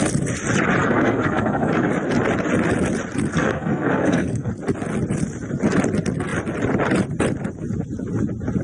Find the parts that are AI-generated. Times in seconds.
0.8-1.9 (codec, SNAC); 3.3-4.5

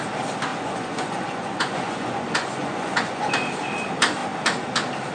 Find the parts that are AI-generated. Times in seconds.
0.5-3.3 (vocoder, Vocos)

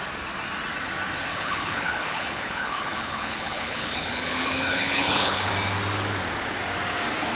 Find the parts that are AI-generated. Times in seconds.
1.3-5.5 (codec, HILCodec)